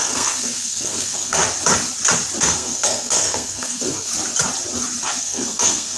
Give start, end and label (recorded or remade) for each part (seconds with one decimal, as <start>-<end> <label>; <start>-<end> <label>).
0.0-1.4 remade; 1.4-2.4 recorded; 2.4-4.1 remade; 4.1-5.2 recorded; 5.2-6.0 remade